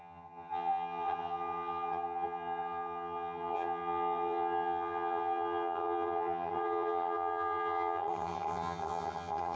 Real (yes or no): no